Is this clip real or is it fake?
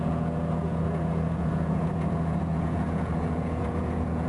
fake